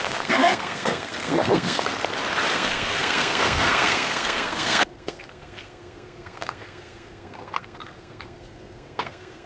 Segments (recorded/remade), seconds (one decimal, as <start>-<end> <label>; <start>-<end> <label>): 0.0-1.9 remade; 1.9-2.5 recorded; 2.5-9.5 remade